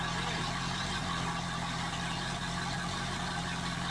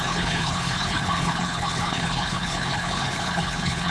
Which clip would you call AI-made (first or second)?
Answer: second